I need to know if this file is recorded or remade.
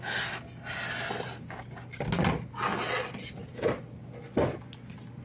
recorded